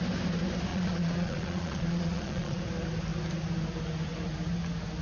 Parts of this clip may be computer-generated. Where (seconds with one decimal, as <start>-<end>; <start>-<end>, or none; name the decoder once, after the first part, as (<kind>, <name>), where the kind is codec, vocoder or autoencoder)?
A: 0.7-2.6 (vocoder, Vocos)